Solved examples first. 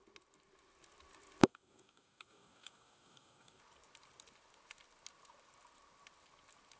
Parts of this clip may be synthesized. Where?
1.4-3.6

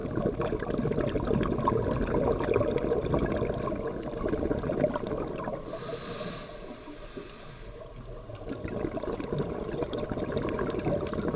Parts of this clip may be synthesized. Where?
none